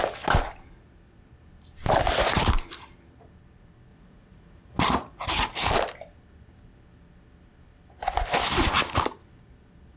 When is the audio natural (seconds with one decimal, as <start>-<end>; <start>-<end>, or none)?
0.0-3.9; 5.7-10.0

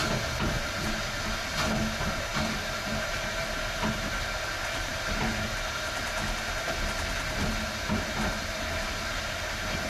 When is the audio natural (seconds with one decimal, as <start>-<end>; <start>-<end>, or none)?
0.0-9.9